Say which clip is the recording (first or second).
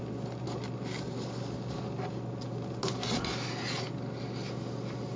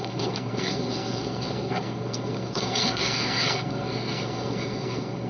first